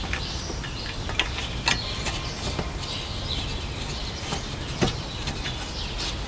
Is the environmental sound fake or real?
real